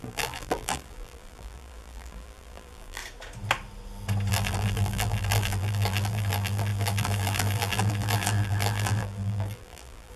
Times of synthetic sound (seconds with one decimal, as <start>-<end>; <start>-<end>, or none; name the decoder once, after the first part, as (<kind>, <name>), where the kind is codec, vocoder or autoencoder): 0.0-3.0 (vocoder, BigVGAN v2); 4.3-10.2